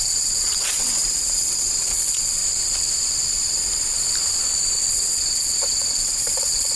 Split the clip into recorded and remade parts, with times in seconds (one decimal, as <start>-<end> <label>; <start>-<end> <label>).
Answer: 0.0-2.4 remade; 2.4-4.9 recorded; 4.9-6.8 remade